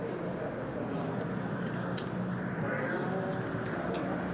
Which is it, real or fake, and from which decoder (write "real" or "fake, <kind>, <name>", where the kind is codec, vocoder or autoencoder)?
real